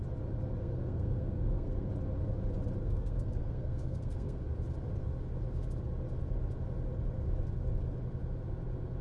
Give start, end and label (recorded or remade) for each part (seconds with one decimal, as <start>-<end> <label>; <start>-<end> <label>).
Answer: 0.0-0.6 recorded; 0.6-1.9 remade; 1.9-2.8 recorded; 2.8-4.4 remade; 4.4-9.0 recorded